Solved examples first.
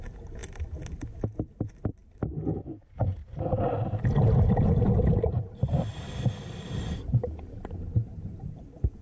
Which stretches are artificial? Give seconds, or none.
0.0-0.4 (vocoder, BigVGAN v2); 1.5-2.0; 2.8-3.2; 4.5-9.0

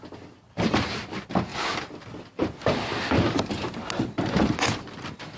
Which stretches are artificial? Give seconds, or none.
1.5-2.4 (vocoder, BigVGAN v2)

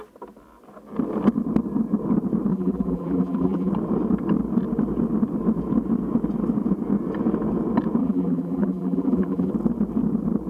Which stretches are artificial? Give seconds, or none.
2.5-3.7 (vocoder, BigVGAN v2); 8.0-9.5

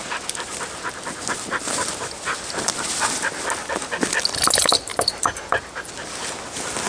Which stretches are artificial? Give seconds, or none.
4.9-5.9 (vocoder, BigVGAN v2)

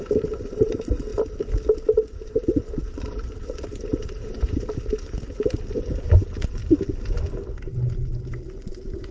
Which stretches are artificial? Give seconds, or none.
0.0-1.1 (vocoder, BigVGAN v2); 2.3-6.6; 8.7-9.1

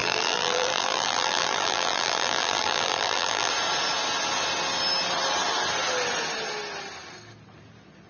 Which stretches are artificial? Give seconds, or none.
0.0-3.5 (vocoder, BigVGAN v2)

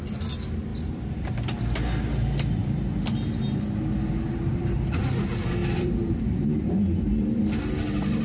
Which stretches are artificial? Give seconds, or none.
0.7-1.6 (vocoder, BigVGAN v2); 5.6-6.7

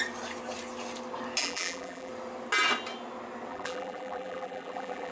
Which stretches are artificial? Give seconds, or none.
1.4-2.1 (vocoder, BigVGAN v2); 3.5-5.1